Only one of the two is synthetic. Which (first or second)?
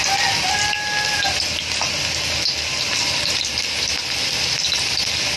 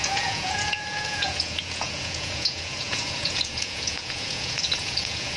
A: second